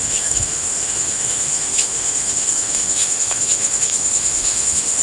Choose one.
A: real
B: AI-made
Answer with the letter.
B